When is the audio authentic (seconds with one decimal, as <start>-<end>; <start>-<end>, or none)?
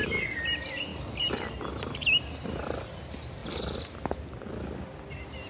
0.0-5.5